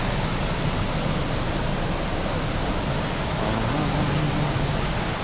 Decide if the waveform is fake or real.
real